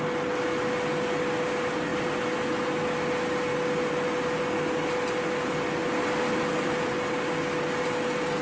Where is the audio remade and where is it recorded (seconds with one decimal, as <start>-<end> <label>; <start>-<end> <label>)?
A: 0.0-8.4 recorded